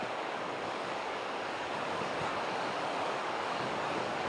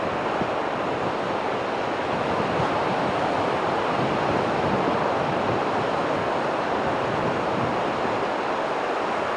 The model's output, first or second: first